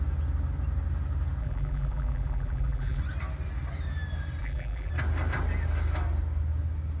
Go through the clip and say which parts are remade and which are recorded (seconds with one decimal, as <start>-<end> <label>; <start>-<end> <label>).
0.0-1.4 recorded; 1.4-3.0 remade; 3.0-4.4 recorded; 4.4-4.9 remade; 4.9-7.0 recorded